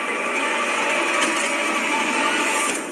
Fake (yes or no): yes